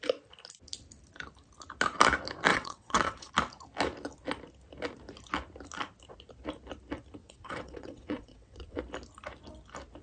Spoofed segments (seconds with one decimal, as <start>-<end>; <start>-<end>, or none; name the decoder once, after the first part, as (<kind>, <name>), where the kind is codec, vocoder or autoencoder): 2.5-3.3 (vocoder, WaveNeXt); 7.2-8.8